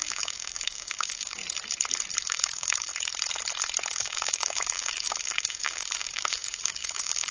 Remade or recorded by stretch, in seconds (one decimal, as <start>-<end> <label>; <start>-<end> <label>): 0.0-1.4 remade; 1.4-2.2 recorded; 2.2-2.9 remade; 2.9-3.9 recorded; 3.9-7.3 remade